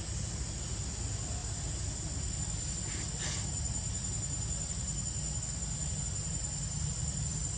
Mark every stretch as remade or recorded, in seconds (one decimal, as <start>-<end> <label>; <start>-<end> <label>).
0.0-7.6 recorded